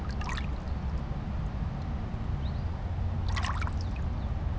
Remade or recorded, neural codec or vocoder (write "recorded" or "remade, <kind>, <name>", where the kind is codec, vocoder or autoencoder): recorded